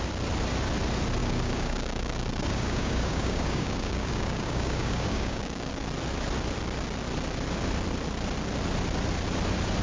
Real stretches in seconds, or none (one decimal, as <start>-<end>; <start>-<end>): 0.0-1.2; 5.7-9.8